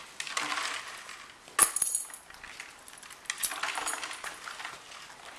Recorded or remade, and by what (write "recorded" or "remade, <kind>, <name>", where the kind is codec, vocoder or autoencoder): recorded